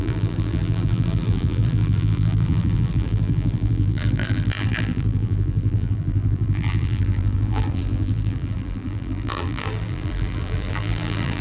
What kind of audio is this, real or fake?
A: fake